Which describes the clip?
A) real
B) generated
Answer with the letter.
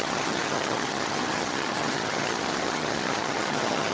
B